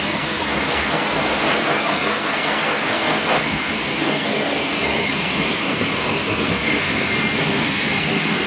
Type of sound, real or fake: fake